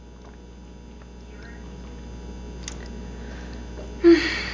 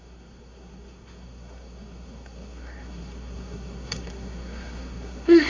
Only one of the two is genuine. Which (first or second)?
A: first